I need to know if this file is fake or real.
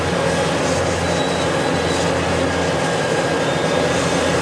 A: real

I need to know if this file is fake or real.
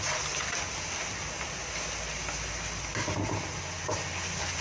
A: real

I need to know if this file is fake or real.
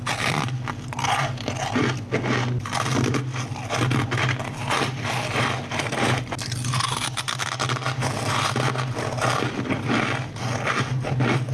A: real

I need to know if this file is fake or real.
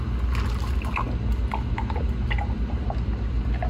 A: real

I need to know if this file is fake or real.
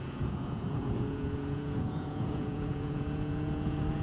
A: fake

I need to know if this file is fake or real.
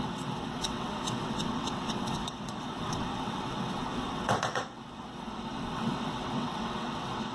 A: fake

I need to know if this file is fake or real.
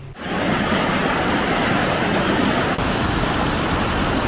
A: real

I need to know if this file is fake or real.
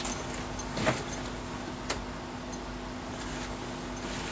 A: real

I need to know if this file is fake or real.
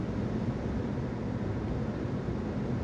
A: real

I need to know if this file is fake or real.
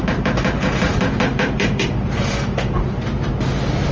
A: real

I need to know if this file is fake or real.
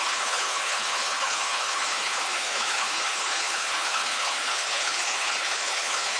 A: fake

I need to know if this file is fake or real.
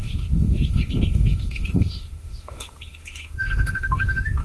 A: fake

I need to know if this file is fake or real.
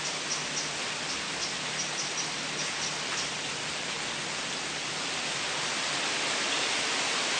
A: real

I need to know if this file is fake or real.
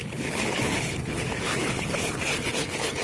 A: fake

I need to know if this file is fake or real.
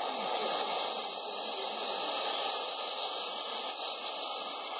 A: real